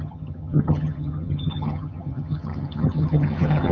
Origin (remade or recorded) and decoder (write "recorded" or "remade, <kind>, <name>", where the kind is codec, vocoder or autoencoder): remade, vocoder, HiFi-GAN